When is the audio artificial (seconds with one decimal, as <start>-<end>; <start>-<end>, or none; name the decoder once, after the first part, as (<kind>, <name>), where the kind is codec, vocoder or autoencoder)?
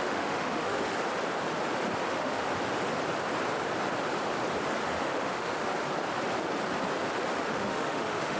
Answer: 0.0-0.9 (autoencoder, DAC-VAE); 2.1-2.5; 5.0-5.7; 7.5-8.4